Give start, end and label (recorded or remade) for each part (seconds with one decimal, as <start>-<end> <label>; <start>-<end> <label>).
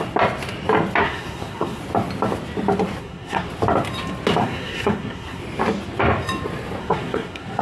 0.0-1.0 recorded; 1.0-1.8 remade; 1.8-3.0 recorded; 3.0-3.5 remade; 3.5-4.4 recorded; 4.4-5.4 remade; 5.4-6.8 recorded; 6.8-7.6 remade